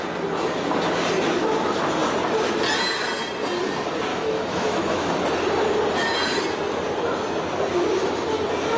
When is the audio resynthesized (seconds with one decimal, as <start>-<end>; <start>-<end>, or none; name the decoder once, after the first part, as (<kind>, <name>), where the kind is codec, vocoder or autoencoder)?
4.1-5.1 (autoencoder, DAC-VAE)